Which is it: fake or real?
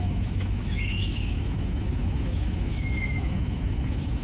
fake